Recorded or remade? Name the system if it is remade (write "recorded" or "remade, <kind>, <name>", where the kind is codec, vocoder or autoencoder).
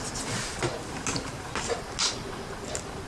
recorded